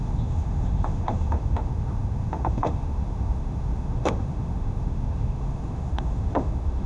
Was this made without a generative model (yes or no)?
no